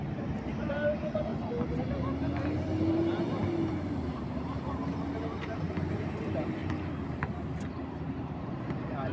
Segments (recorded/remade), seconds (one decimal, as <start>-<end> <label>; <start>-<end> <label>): 0.0-1.3 remade; 1.3-3.9 recorded; 3.9-6.6 remade; 6.6-7.7 recorded; 7.7-9.1 remade